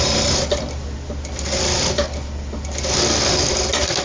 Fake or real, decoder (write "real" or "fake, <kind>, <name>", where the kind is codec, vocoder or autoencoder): real